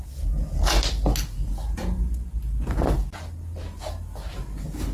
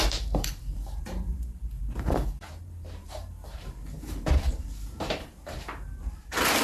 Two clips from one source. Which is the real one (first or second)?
first